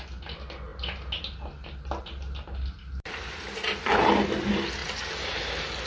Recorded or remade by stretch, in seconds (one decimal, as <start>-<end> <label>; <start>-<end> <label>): 0.0-5.9 recorded